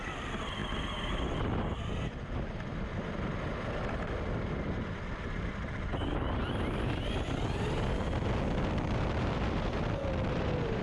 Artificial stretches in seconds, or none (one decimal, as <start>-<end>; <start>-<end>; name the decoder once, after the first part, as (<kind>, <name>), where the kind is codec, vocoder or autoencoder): none